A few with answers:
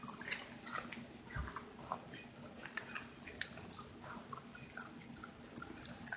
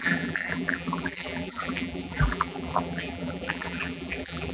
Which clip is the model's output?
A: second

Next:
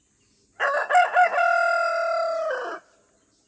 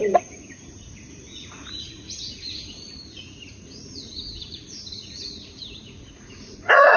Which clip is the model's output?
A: second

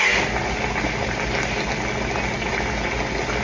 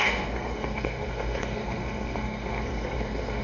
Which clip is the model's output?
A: second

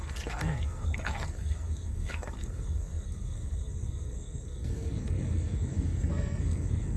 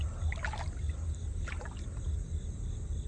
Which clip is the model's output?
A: first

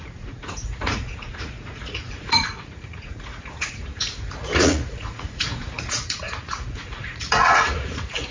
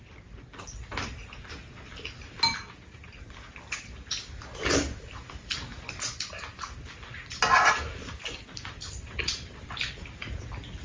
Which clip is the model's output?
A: first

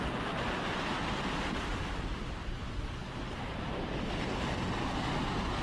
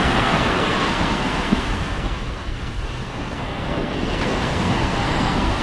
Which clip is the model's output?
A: second